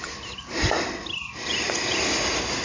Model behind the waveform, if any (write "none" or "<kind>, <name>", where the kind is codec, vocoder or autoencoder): none